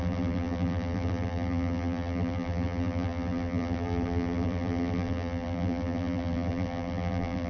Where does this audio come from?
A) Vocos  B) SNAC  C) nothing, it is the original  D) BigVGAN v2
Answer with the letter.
D